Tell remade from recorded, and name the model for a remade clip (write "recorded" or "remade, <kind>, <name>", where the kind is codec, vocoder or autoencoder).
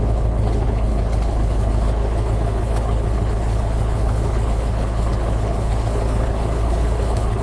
remade, codec, HILCodec